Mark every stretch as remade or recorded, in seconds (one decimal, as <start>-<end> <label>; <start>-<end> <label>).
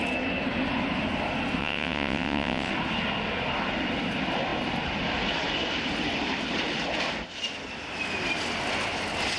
0.0-1.6 recorded; 1.6-2.7 remade; 2.7-9.4 recorded